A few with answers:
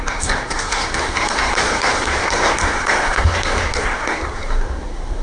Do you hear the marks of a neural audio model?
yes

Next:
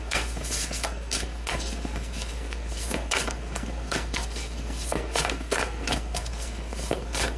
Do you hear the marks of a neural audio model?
yes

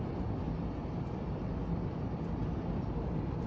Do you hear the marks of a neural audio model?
no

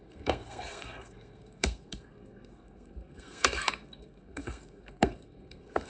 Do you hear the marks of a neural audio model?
yes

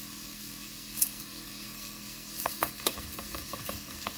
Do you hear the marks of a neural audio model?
yes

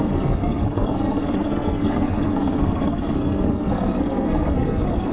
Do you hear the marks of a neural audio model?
yes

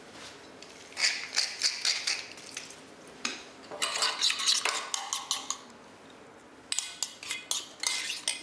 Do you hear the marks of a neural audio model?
no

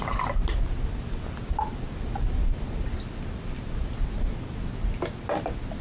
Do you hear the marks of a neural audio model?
no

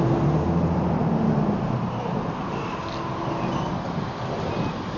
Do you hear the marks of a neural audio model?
no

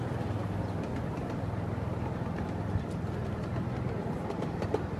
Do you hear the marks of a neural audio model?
no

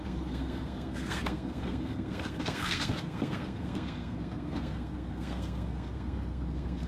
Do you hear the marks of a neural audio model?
yes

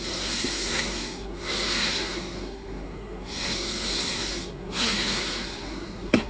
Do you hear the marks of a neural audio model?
yes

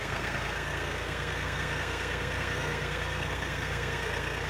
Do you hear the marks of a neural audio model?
yes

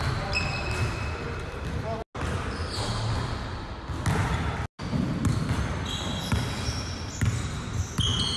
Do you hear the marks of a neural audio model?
no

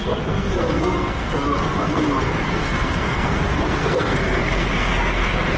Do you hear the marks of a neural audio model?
yes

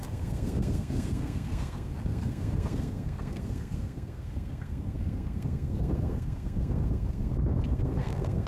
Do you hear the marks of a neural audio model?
yes